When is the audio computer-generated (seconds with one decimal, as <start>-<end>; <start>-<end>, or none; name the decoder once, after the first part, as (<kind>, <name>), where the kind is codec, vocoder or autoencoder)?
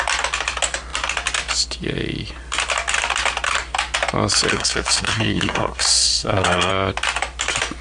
4.5-6.7 (codec, SNAC)